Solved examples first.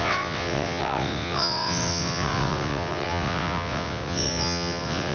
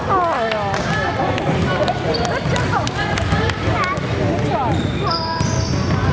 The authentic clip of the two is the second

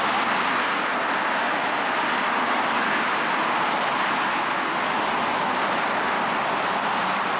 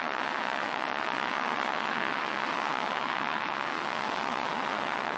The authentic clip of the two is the first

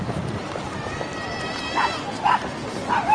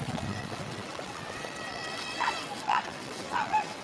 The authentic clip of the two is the first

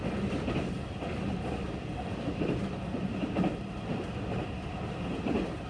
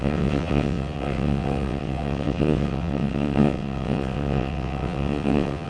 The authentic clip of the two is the first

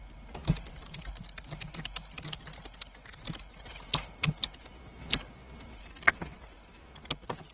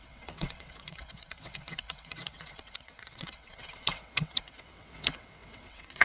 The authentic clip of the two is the first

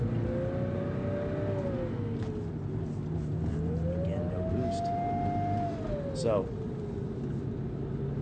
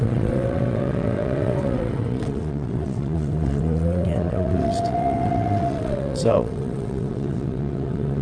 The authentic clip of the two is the first